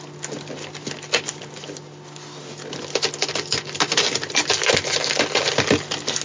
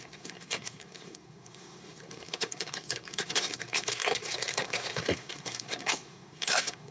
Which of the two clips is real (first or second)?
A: first